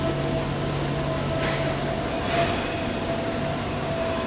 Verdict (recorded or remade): recorded